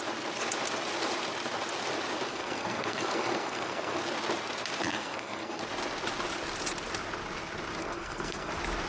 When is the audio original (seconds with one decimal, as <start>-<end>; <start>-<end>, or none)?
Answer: 0.0-2.3; 4.0-4.9; 5.6-7.8; 8.5-8.9